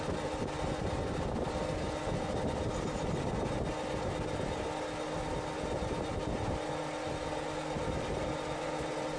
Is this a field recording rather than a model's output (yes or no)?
yes